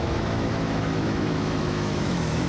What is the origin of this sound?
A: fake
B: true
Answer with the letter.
A